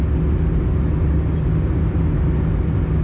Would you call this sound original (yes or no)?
yes